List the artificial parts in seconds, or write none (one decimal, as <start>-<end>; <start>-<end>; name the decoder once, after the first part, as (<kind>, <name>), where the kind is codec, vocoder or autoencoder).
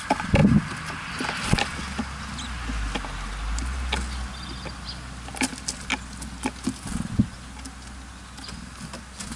0.4-1.3 (vocoder, BigVGAN v2)